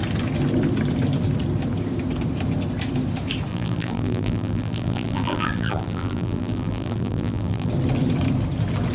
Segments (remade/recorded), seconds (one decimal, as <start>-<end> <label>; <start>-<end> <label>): 0.0-3.5 recorded; 3.5-7.7 remade; 7.7-8.9 recorded